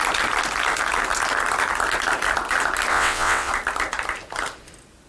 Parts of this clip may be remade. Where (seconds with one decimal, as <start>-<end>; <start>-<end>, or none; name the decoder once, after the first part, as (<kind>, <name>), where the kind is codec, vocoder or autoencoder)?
2.9-3.5 (vocoder, WaveNeXt)